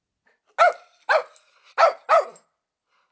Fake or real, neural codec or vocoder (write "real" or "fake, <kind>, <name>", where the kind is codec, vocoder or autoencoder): real